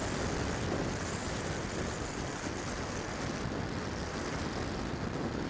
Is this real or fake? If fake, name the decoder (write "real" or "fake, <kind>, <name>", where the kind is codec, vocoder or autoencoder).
real